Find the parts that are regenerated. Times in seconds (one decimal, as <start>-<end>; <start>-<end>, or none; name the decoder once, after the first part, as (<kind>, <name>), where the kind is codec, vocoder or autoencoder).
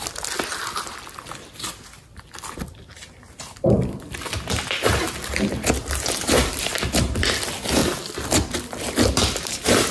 none